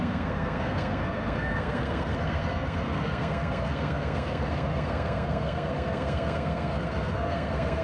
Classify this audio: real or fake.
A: fake